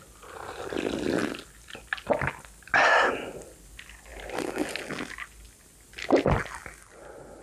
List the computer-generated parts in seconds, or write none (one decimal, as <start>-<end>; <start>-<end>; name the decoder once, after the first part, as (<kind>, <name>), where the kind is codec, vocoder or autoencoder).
none